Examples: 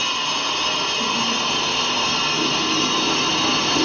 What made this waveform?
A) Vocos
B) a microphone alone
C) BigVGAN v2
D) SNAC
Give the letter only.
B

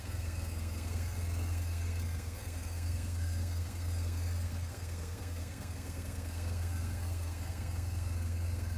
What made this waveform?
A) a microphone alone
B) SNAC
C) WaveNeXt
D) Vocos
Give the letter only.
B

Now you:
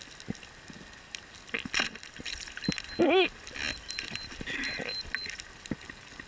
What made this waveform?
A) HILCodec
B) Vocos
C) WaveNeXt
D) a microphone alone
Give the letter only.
D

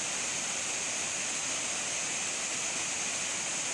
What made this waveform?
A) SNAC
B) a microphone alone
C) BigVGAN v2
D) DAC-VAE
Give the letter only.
B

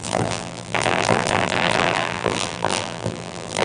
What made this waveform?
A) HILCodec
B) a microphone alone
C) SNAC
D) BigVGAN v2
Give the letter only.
D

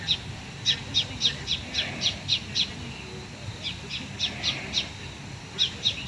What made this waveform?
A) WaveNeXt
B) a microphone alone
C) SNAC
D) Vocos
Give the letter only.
B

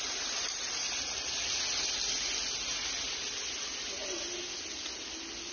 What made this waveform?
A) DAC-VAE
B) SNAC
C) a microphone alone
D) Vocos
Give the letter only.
C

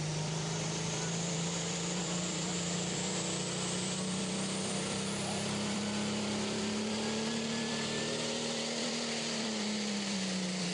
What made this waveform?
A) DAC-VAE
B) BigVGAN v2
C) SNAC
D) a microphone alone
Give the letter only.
B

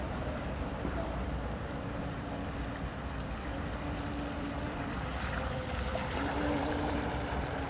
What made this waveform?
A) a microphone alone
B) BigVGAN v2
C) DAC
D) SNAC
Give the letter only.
B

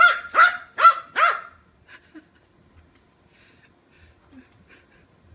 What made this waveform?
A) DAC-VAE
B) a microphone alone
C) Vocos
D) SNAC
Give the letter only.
B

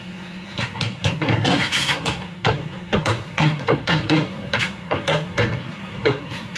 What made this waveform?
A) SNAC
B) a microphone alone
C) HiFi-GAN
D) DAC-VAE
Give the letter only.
A